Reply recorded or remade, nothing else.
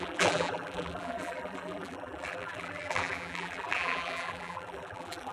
remade